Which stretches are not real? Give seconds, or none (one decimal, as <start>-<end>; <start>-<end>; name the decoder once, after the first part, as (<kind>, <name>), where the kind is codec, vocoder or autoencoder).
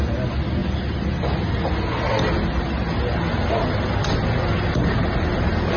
none